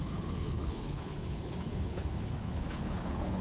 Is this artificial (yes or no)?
yes